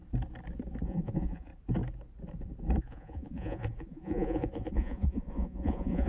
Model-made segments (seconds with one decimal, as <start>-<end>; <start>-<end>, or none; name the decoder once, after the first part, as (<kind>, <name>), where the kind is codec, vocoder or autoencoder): 0.8-1.5 (vocoder, Vocos); 2.8-6.1